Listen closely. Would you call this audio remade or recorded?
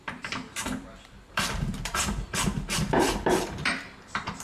remade